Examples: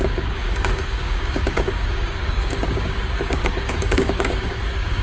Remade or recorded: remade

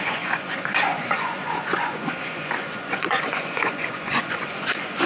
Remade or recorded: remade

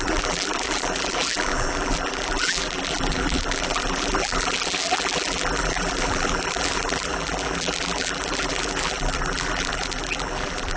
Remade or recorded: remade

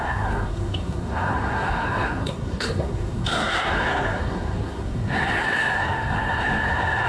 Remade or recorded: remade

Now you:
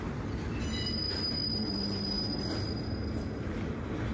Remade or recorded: recorded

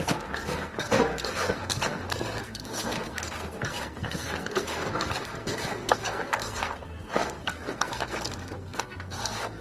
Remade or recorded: remade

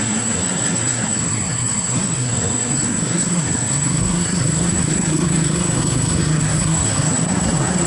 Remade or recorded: remade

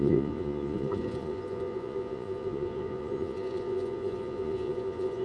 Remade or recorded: remade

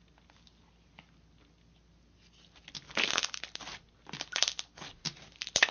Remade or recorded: recorded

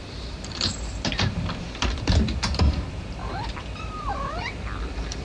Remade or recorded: remade